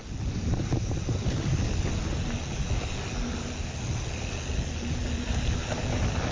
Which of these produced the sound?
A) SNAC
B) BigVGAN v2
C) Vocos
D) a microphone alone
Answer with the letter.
D